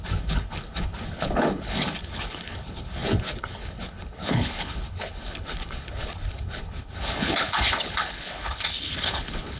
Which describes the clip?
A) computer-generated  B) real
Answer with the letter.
A